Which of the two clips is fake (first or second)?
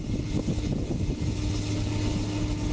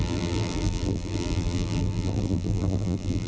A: second